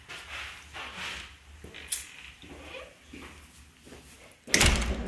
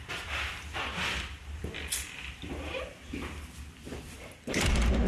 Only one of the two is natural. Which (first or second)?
first